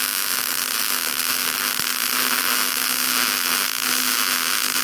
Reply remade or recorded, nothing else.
recorded